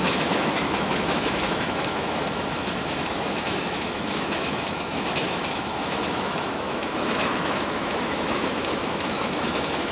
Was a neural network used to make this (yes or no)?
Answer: yes